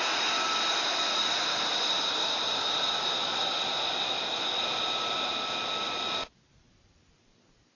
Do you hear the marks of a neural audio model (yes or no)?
no